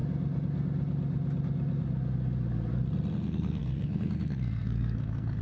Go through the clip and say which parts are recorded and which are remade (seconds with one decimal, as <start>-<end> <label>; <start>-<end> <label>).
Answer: 0.0-3.1 recorded; 3.1-5.4 remade